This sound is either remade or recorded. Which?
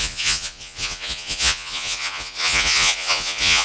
remade